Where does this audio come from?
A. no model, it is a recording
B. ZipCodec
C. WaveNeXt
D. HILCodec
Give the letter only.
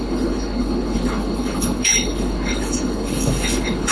D